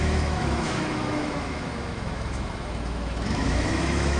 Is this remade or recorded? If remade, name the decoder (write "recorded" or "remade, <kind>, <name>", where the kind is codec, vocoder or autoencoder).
remade, autoencoder, DAC-VAE